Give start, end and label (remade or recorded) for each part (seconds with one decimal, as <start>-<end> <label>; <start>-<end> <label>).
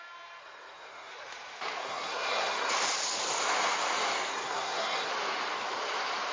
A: 0.0-0.4 recorded; 0.4-1.1 remade; 1.1-1.8 recorded; 1.8-2.7 remade; 2.7-4.3 recorded; 4.3-5.1 remade; 5.1-6.3 recorded